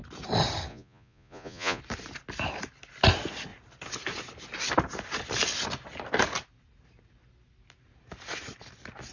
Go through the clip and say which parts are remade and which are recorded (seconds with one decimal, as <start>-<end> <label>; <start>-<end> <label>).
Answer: 0.0-0.7 recorded; 0.7-1.8 remade; 1.8-9.1 recorded